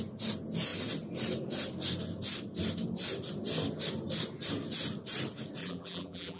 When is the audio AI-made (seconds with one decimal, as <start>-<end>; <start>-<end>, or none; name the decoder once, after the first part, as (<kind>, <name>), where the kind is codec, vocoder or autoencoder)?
5.6-6.4 (vocoder, BigVGAN v2)